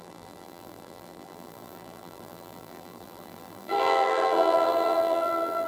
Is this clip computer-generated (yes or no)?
yes